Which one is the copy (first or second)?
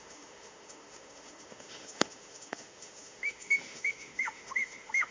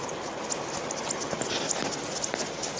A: first